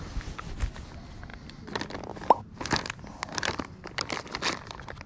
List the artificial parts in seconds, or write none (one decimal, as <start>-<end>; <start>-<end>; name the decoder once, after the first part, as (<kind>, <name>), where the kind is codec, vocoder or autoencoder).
none